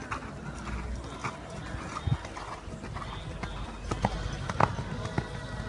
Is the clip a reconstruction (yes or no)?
no